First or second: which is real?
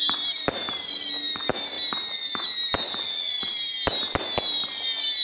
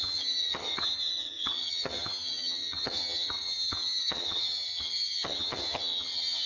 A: first